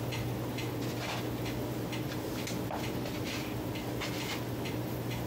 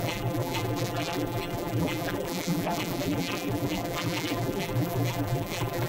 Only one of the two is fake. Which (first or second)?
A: second